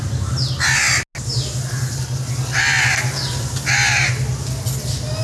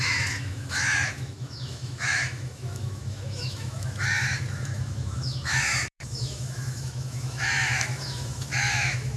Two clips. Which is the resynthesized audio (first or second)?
second